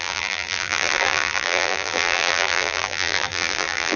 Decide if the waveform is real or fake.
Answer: fake